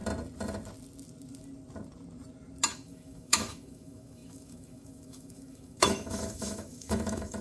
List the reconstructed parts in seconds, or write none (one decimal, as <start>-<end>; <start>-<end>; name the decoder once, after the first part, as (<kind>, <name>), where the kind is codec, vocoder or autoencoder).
2.7-7.4 (autoencoder, DAC-VAE)